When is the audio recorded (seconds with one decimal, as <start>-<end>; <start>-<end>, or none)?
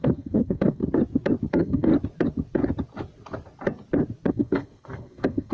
0.8-1.5; 1.9-4.3